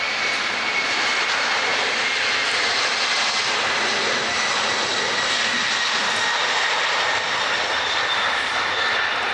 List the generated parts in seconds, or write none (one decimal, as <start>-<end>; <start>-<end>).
none